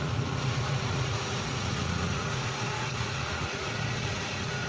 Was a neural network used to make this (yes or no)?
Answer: yes